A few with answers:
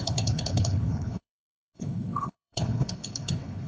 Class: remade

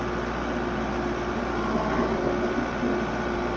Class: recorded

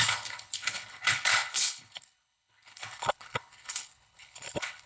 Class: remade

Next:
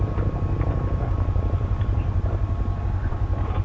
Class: recorded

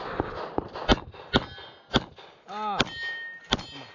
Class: recorded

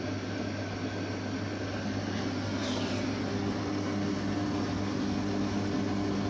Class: recorded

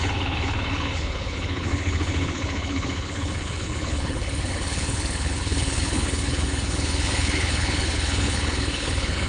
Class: remade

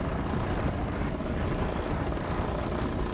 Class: recorded